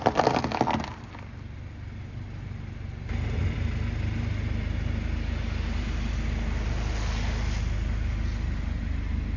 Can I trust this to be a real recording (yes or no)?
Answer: yes